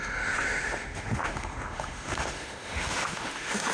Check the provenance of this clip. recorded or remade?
remade